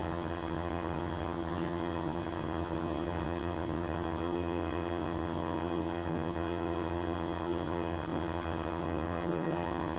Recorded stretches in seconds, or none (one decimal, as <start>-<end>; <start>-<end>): none

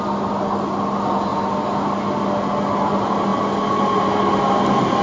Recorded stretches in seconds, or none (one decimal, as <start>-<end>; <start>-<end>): 0.0-5.0

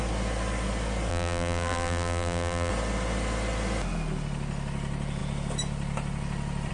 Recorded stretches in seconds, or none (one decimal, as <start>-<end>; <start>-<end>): 0.0-1.1; 2.7-6.7